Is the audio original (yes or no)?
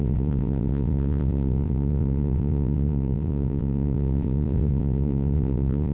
no